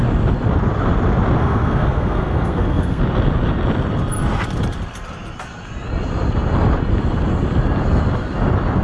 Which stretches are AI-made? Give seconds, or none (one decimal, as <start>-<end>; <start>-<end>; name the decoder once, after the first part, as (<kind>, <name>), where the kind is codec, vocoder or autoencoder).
1.4-3.0 (codec, SNAC)